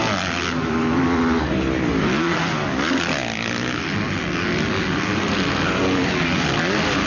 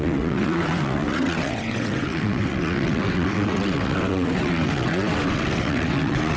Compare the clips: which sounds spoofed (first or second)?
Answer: second